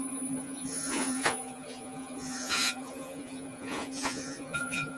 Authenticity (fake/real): fake